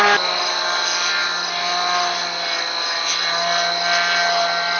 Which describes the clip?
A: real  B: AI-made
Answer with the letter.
A